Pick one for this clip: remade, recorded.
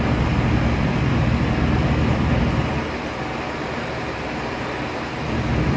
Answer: recorded